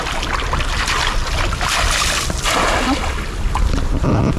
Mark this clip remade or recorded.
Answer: recorded